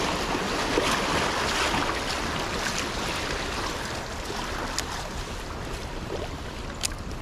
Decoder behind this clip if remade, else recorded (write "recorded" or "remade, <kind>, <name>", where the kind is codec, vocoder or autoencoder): recorded